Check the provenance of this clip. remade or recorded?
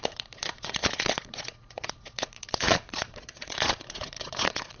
remade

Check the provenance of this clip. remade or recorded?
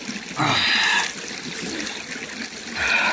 recorded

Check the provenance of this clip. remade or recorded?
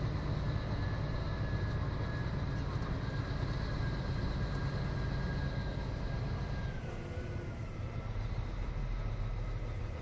recorded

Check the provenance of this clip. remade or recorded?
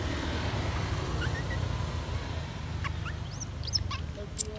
recorded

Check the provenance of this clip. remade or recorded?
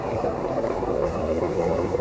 remade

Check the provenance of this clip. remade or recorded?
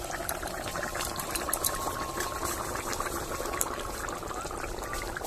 remade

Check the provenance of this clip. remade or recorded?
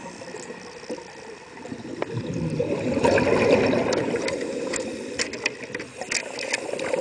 recorded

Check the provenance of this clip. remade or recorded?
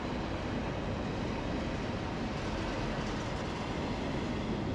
recorded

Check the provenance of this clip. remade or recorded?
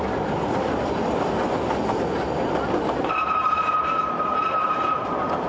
recorded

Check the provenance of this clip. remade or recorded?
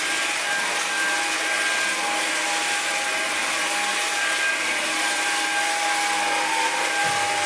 recorded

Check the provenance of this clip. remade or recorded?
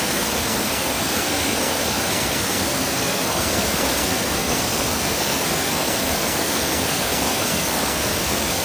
remade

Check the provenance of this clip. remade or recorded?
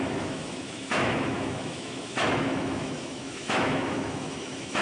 remade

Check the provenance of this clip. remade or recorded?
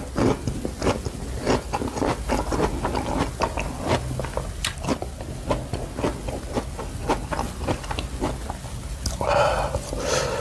recorded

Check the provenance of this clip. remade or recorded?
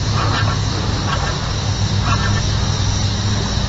recorded